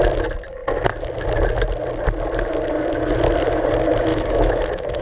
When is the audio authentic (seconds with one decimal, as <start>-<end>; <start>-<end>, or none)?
0.0-4.1